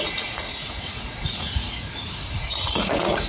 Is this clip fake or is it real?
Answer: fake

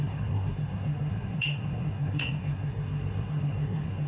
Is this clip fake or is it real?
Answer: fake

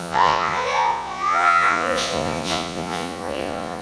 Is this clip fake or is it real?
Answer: fake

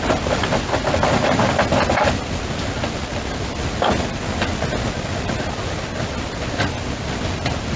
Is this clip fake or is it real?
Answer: real